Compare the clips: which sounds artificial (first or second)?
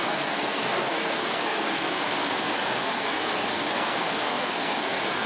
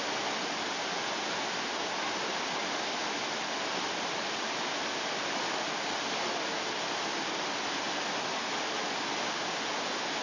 first